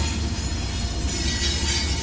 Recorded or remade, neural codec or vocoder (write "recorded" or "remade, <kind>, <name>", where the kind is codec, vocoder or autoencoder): recorded